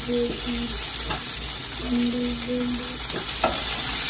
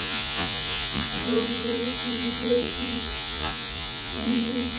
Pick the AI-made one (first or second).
second